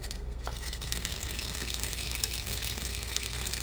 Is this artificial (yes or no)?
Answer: yes